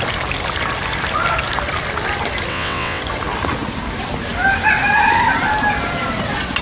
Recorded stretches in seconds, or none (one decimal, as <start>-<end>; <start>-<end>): 0.0-2.5; 3.0-6.6